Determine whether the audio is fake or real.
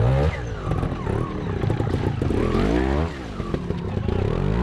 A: real